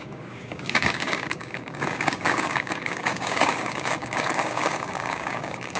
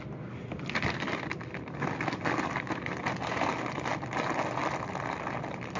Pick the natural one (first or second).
second